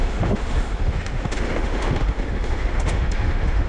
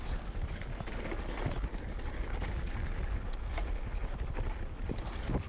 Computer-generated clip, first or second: first